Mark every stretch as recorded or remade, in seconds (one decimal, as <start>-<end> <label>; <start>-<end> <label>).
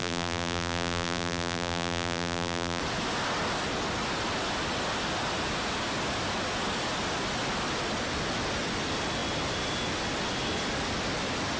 0.0-2.8 remade; 2.8-11.6 recorded